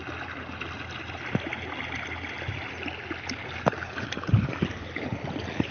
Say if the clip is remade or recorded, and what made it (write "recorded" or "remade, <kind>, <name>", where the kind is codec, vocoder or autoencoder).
recorded